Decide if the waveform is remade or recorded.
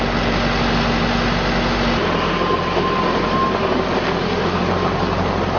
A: recorded